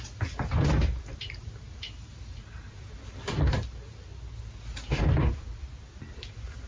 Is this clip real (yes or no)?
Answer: yes